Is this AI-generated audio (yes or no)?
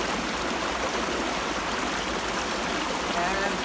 no